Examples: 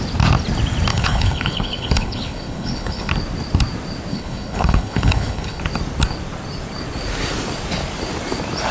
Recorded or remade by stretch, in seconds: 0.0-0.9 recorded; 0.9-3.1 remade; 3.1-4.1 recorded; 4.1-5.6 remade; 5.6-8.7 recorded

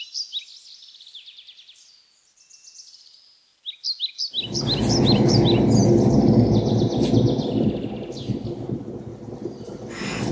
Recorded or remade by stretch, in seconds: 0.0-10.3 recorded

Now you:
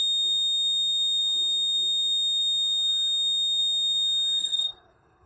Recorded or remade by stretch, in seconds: 0.0-4.4 recorded; 4.4-5.3 remade